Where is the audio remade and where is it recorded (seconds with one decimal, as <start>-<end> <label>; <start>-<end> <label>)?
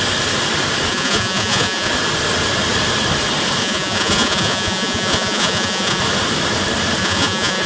0.0-0.9 recorded; 0.9-1.9 remade; 1.9-3.6 recorded; 3.6-6.0 remade; 6.0-7.0 recorded; 7.0-7.7 remade